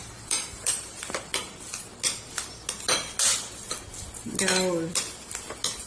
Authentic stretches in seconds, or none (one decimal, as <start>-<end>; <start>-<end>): 2.0-5.9